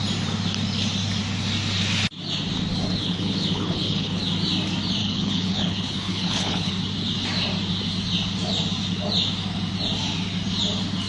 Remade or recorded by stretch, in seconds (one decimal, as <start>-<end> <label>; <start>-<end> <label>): 0.0-3.0 recorded; 3.0-4.2 remade; 4.2-5.0 recorded; 5.0-6.7 remade; 6.7-11.1 recorded